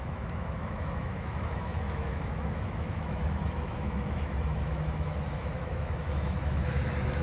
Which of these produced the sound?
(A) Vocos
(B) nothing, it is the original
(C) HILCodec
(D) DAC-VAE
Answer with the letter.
D